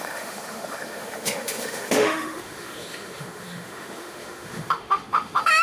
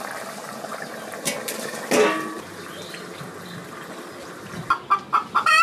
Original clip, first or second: second